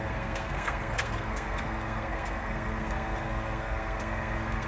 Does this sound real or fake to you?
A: fake